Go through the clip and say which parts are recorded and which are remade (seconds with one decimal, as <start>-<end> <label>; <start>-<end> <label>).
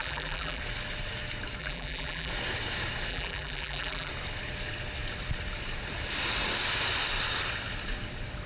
0.0-0.6 remade; 0.6-1.6 recorded; 1.6-2.3 remade; 2.3-3.1 recorded; 3.1-4.1 remade; 4.1-8.5 recorded